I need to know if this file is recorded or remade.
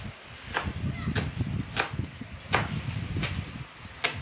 recorded